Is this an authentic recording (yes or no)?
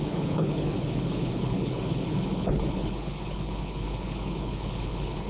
no